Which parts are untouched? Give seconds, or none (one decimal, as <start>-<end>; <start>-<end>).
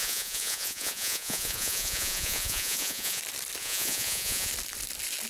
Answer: 3.2-3.6; 4.5-5.3